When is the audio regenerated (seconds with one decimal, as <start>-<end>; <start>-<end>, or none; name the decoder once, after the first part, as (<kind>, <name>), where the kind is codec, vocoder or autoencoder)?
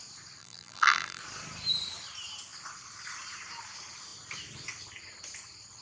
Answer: 0.4-1.2 (vocoder, BigVGAN v2)